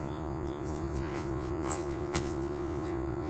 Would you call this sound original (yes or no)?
no